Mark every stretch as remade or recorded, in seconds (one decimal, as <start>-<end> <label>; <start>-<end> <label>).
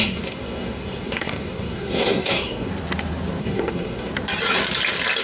0.0-2.7 remade; 2.7-3.4 recorded; 3.4-4.1 remade; 4.1-5.2 recorded